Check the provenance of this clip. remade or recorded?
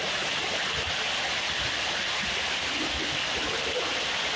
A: recorded